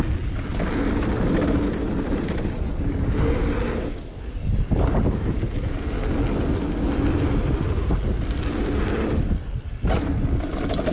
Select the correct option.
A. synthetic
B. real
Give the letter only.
B